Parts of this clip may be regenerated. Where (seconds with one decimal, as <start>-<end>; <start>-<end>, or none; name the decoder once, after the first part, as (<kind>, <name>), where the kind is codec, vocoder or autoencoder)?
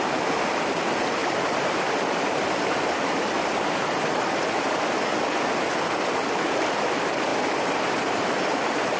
1.2-4.4 (vocoder, BigVGAN v2)